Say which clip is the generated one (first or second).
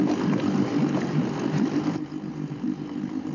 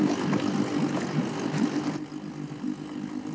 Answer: first